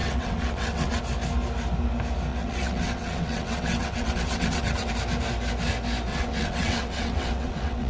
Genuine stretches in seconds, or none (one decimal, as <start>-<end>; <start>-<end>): 1.0-2.3; 4.9-6.1